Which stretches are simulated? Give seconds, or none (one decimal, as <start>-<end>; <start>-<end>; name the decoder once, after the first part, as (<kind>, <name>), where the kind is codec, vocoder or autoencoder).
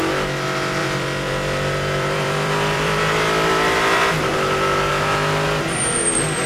0.8-3.0 (vocoder, BigVGAN v2)